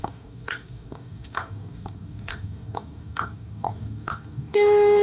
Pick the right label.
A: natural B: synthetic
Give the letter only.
B